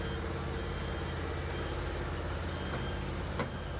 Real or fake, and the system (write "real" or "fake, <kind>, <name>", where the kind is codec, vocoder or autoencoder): real